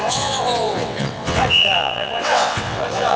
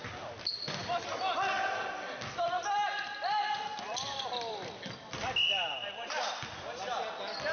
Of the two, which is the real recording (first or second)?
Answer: second